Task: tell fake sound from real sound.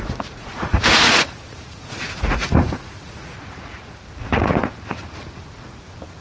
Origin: fake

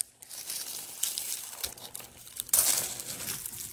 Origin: real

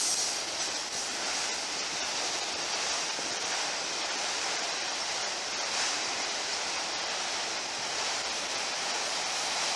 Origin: fake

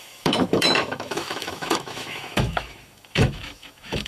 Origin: fake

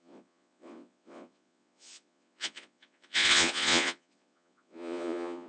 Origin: fake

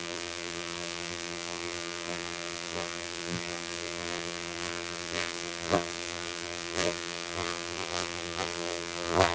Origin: fake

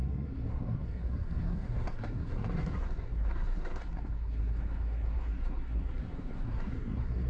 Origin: fake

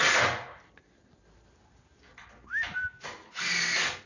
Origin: real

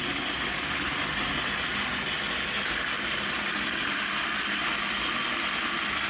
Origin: real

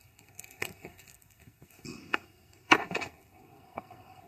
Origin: fake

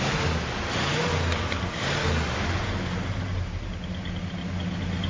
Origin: real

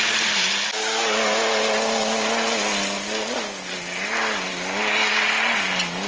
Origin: real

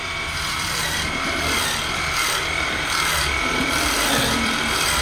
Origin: fake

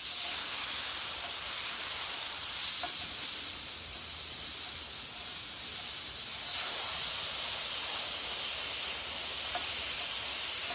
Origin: real